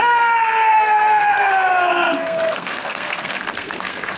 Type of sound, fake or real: fake